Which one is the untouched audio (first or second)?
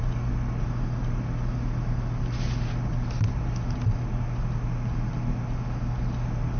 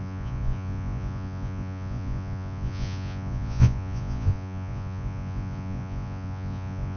first